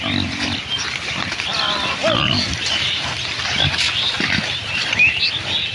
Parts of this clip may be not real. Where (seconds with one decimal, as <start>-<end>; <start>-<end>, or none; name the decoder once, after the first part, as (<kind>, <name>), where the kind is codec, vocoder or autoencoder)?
none